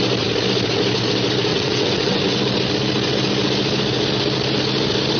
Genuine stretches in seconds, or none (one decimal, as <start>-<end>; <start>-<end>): 0.0-1.5; 2.2-5.2